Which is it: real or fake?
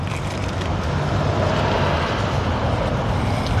real